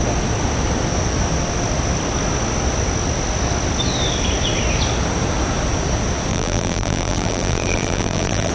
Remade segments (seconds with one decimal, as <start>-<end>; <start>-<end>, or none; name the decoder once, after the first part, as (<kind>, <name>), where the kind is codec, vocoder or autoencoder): 6.3-8.5 (vocoder, BigVGAN v2)